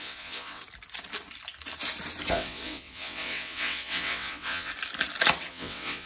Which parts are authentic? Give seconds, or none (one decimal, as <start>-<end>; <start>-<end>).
0.6-2.3; 4.7-5.5